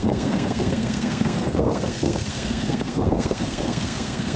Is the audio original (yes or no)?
no